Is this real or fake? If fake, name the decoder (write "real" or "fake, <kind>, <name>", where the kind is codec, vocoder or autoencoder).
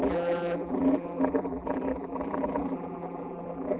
fake, vocoder, BigVGAN v2